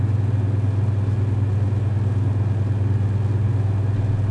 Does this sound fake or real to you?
real